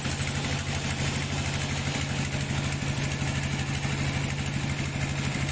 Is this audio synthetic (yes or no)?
no